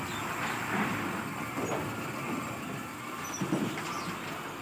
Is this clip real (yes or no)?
yes